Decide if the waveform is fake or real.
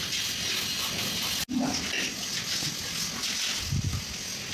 real